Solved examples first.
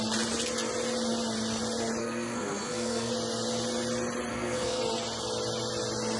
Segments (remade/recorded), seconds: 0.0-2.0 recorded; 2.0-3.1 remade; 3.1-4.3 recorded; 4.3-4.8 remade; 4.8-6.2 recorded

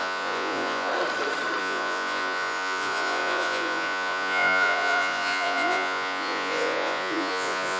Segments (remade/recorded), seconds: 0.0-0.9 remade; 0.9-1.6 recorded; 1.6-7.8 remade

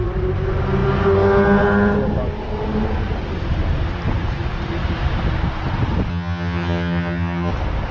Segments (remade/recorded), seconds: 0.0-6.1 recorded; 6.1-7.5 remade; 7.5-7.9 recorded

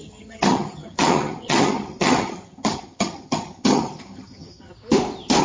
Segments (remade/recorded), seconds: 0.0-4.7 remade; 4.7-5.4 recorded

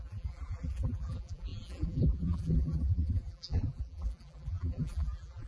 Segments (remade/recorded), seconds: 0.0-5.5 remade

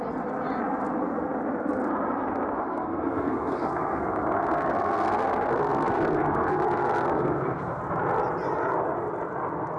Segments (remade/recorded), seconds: 0.0-2.6 recorded; 2.6-7.8 remade; 7.8-9.8 recorded